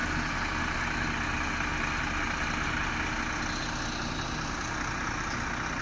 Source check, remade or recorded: recorded